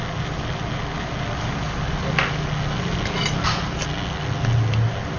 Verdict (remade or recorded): recorded